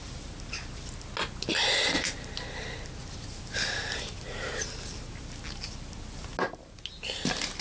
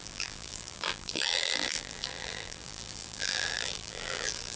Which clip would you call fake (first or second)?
second